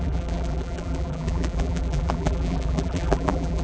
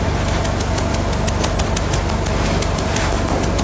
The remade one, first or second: first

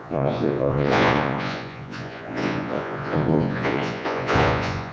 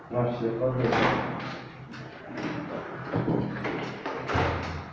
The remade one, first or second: first